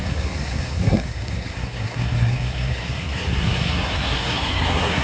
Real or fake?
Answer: fake